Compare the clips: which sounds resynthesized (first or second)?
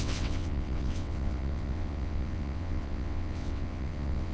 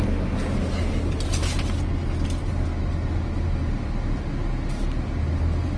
first